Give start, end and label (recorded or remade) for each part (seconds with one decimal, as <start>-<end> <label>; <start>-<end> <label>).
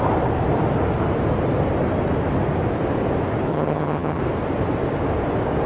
0.0-3.5 recorded; 3.5-4.2 remade; 4.2-5.7 recorded